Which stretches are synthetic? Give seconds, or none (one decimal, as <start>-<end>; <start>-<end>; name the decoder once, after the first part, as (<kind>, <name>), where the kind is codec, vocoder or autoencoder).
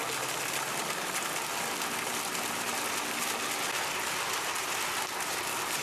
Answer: none